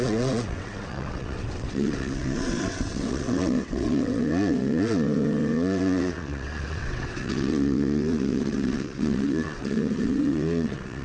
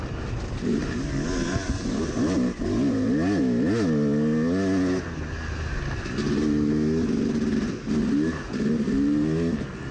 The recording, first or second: second